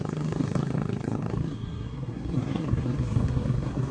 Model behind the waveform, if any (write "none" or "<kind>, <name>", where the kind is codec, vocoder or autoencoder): codec, SNAC